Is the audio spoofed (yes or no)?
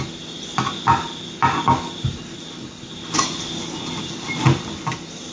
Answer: no